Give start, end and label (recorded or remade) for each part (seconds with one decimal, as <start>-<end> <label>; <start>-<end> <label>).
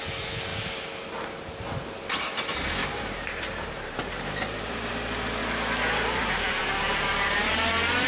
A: 0.0-2.8 recorded; 2.8-4.9 remade; 4.9-8.1 recorded